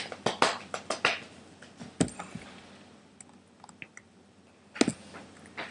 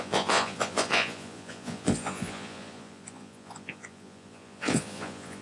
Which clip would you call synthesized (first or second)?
second